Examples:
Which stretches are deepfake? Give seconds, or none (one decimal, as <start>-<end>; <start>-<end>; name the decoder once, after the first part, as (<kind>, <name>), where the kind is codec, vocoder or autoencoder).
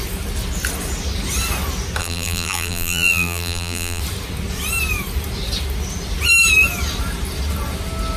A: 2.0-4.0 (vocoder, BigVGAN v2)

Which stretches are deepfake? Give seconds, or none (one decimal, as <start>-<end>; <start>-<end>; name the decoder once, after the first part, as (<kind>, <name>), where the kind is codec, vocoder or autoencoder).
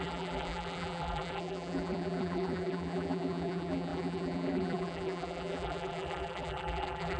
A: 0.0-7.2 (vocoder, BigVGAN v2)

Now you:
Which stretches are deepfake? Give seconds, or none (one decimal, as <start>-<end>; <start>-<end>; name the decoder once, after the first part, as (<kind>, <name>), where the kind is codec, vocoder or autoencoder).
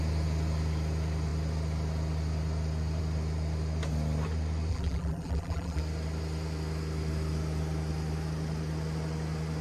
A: 4.7-5.8 (vocoder, BigVGAN v2)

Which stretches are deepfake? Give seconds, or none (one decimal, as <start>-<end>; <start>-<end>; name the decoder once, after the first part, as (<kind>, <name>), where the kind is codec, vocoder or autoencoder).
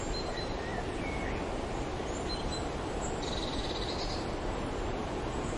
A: 0.0-0.7 (vocoder, BigVGAN v2); 4.1-5.6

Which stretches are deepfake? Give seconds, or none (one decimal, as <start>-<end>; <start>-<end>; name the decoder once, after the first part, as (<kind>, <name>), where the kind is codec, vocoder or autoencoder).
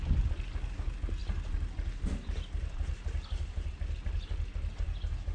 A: none